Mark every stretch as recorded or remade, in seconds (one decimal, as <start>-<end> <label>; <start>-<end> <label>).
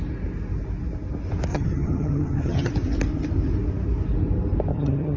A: 0.0-1.5 recorded; 1.5-2.7 remade; 2.7-4.7 recorded; 4.7-5.2 remade